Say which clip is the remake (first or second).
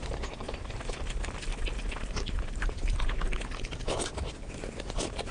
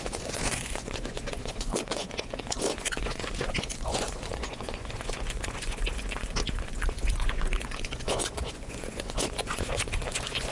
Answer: second